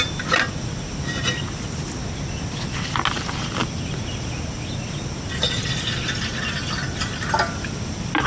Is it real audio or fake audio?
real